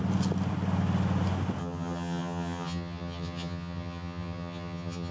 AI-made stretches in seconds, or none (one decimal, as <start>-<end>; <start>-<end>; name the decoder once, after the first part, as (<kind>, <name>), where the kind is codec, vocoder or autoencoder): 1.6-5.1 (vocoder, HiFi-GAN)